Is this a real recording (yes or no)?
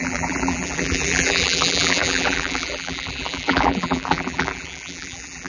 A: no